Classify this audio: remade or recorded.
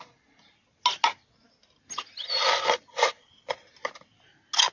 recorded